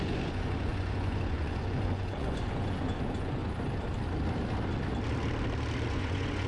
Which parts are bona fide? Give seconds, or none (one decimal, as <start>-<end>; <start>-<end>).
3.4-5.9

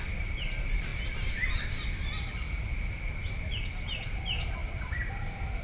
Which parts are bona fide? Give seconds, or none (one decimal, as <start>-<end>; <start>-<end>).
0.0-5.6